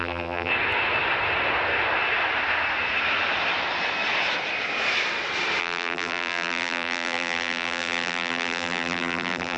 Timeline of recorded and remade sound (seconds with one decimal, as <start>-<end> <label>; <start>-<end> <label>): 0.0-0.5 remade; 0.5-5.6 recorded; 5.6-9.6 remade